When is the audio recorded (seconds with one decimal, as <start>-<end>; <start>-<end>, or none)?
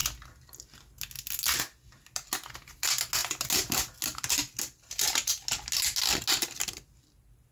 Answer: 0.0-7.5